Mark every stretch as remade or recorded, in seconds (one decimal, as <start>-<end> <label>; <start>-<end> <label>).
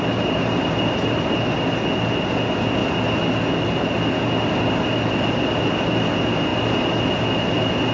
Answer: 0.0-7.9 recorded